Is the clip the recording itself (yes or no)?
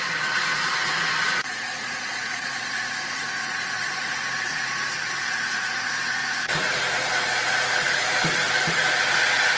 no